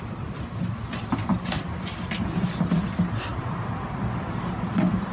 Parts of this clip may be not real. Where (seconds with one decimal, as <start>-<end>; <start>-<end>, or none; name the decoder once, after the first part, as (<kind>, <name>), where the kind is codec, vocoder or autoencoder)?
1.3-4.4 (vocoder, BigVGAN v2)